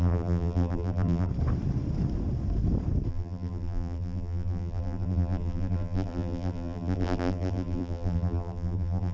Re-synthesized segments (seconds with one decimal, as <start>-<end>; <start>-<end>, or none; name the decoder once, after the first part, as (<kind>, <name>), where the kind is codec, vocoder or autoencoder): 0.0-1.3 (vocoder, BigVGAN v2); 3.1-9.1